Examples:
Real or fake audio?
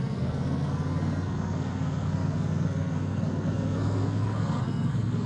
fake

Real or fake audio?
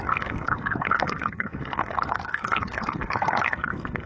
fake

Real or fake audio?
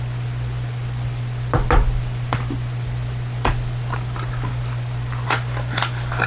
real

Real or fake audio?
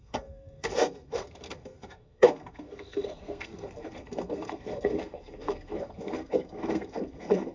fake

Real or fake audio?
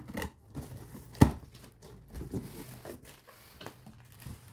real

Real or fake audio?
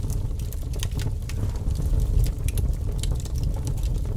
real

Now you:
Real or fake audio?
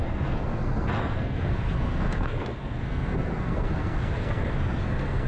fake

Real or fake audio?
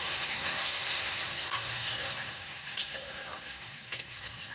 fake